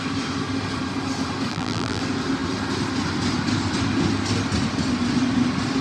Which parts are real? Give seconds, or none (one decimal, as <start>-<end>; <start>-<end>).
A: 0.0-1.5; 2.0-5.8